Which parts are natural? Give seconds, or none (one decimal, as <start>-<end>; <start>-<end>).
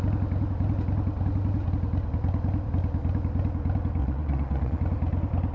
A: 0.0-4.0; 4.8-5.5